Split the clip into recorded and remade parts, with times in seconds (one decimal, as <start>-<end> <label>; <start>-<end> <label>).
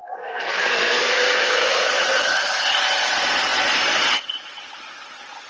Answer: 0.0-2.0 remade; 2.0-5.5 recorded